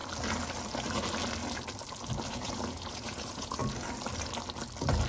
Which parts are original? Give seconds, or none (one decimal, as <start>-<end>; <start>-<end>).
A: 0.0-2.3; 3.6-5.1